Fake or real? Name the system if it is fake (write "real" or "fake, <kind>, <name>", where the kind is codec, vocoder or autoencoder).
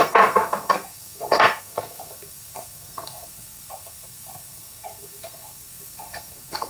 fake, codec, SNAC